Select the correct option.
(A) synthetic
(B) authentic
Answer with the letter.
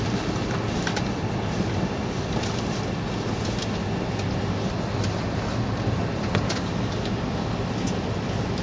B